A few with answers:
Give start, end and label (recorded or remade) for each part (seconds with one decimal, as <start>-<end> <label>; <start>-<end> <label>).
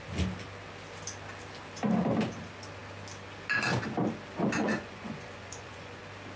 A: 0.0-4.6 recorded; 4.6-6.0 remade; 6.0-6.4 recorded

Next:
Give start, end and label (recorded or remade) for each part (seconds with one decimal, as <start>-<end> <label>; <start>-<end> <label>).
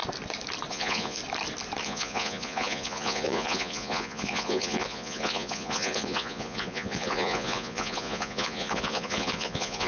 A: 0.0-0.7 recorded; 0.7-1.2 remade; 1.2-1.8 recorded; 1.8-9.9 remade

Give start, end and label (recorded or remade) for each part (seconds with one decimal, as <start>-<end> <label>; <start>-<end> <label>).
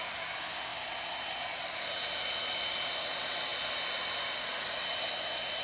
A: 0.0-5.6 recorded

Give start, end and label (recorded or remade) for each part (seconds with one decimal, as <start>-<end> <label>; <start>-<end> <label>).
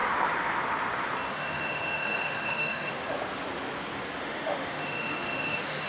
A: 0.0-1.3 recorded; 1.3-3.0 remade; 3.0-4.2 recorded; 4.2-5.9 remade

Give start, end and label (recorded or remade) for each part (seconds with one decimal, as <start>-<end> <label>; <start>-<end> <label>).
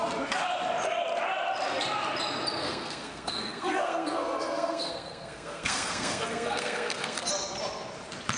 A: 0.0-2.6 recorded; 2.6-7.3 remade; 7.3-8.4 recorded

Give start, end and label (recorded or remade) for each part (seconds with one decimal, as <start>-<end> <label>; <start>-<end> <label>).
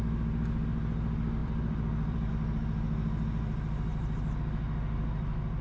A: 0.0-1.4 recorded; 1.4-2.3 remade; 2.3-3.9 recorded; 3.9-4.4 remade; 4.4-5.6 recorded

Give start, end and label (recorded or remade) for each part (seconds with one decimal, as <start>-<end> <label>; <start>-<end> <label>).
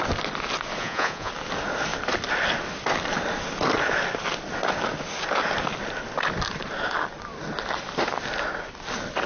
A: 0.0-0.8 recorded; 0.8-1.3 remade; 1.3-9.3 recorded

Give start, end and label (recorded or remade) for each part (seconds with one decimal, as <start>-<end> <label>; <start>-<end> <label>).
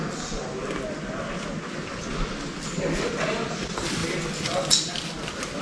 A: 0.0-5.6 recorded